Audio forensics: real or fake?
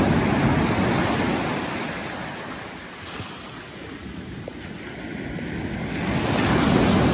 real